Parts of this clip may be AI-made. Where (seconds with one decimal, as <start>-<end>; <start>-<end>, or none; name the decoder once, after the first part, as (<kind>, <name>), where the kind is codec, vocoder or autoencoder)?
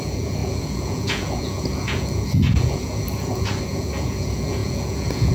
0.0-5.3 (vocoder, Vocos)